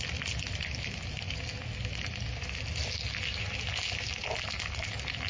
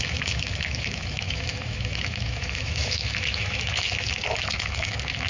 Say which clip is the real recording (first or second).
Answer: first